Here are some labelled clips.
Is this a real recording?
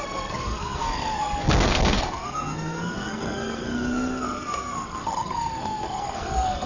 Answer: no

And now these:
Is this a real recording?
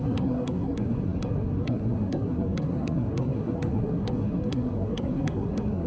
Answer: no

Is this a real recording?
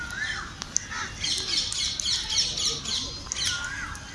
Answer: yes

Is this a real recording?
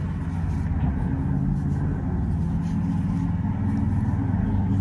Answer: yes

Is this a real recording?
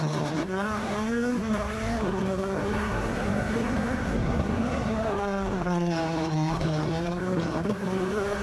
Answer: no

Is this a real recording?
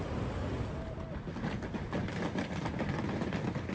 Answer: yes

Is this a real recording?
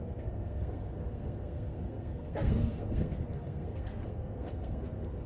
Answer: no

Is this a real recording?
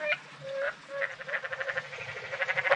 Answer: yes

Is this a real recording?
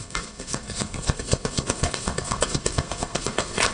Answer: no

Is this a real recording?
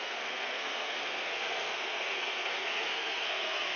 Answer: no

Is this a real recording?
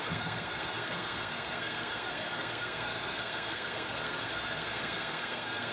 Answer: no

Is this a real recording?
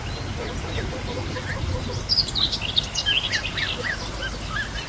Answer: yes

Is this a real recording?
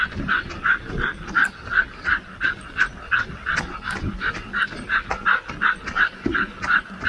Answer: yes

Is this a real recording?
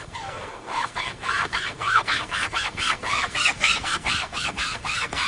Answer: no